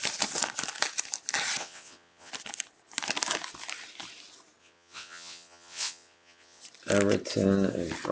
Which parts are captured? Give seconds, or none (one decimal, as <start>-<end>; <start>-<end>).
0.0-1.6; 2.3-4.6; 6.6-8.1